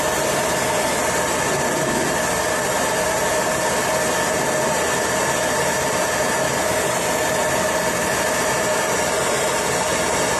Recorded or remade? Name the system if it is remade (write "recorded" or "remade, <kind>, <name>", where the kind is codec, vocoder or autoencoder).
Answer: recorded